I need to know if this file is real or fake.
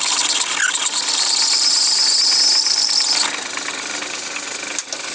real